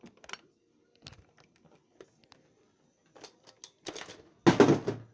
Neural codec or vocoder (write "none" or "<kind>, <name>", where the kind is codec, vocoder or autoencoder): none